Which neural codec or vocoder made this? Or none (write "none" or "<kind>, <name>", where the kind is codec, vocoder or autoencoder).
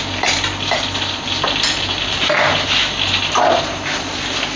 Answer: none